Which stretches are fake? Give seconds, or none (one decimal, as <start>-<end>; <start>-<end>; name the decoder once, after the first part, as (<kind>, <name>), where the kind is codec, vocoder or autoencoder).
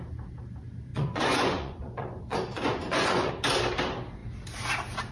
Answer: 0.9-3.3 (vocoder, Vocos)